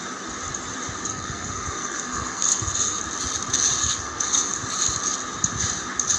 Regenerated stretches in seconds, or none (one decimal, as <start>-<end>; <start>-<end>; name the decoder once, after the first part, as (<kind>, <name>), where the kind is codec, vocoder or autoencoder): 1.1-3.0 (codec, SNAC); 3.8-4.5